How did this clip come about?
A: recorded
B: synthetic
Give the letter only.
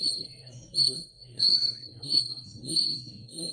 B